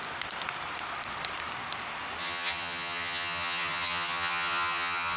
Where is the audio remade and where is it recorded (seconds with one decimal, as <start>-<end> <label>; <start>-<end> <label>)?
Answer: 0.0-2.2 recorded; 2.2-5.2 remade